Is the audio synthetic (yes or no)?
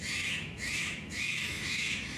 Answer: yes